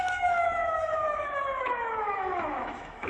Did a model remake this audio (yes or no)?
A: yes